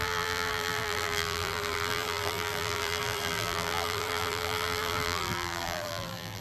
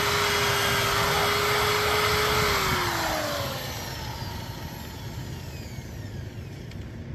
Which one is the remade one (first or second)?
first